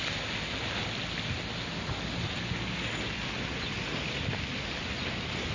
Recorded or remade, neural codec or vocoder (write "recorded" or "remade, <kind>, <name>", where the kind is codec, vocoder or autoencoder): recorded